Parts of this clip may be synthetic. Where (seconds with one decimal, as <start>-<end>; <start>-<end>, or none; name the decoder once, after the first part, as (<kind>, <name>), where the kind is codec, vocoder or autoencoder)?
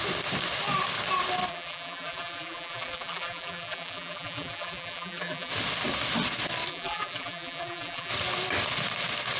1.5-5.5 (vocoder, BigVGAN v2); 6.7-8.1